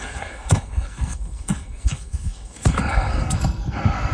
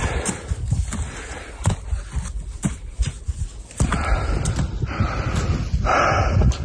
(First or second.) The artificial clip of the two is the first